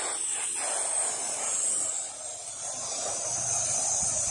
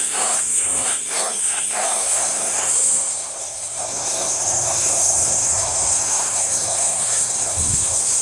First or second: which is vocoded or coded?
second